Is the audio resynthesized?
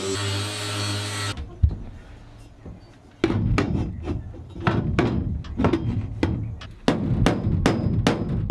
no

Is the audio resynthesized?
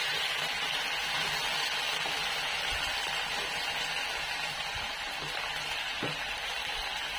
no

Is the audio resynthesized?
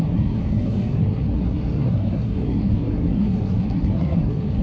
yes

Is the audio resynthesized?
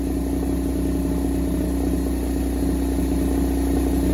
no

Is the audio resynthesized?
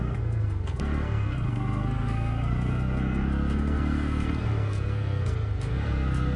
yes